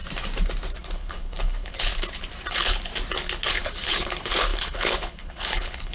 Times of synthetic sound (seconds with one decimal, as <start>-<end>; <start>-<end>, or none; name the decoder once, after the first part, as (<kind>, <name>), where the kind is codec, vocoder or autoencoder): 0.8-1.9 (codec, HILCodec); 2.5-2.9; 3.5-5.9